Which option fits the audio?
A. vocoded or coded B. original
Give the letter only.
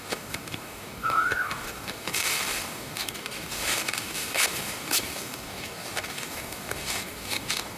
A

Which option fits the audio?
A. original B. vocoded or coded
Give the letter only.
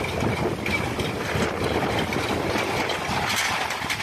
A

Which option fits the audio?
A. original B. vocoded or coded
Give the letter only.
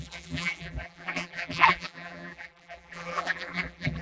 B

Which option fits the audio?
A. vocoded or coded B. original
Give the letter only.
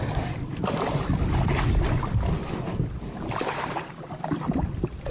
A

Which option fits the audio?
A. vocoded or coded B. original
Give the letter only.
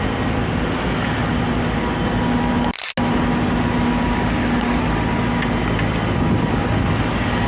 B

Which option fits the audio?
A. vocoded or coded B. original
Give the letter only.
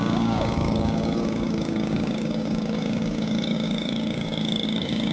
A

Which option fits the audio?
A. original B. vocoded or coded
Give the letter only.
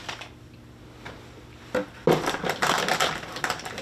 A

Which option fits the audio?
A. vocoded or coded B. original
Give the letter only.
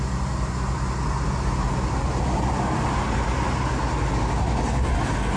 B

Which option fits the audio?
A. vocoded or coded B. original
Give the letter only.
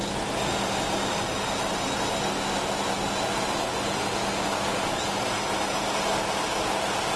B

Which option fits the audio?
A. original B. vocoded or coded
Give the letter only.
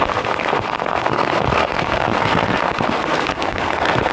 B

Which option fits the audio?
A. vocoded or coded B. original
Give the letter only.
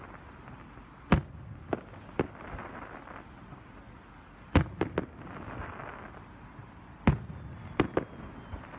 B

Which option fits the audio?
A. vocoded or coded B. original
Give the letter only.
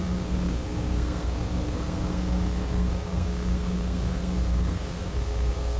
A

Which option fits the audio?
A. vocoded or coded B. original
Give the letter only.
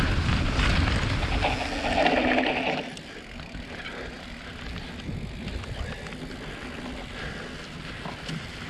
B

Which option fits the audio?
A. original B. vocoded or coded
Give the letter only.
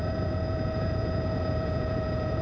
B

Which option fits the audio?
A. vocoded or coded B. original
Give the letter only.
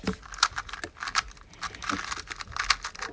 B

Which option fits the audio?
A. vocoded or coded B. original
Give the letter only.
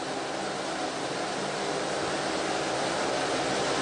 B